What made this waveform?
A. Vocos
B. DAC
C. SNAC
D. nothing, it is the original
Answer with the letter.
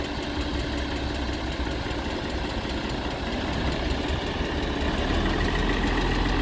D